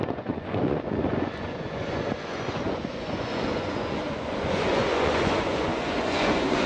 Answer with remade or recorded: remade